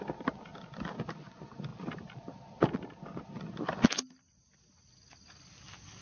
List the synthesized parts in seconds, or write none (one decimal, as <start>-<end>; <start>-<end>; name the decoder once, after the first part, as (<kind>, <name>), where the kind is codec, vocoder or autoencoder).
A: none